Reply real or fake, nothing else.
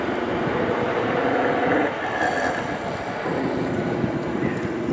real